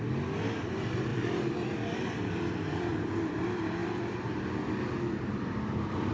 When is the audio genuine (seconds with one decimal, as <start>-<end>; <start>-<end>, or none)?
0.0-1.1; 2.9-3.8; 4.4-6.1